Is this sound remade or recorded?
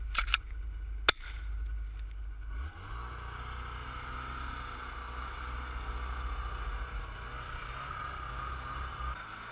recorded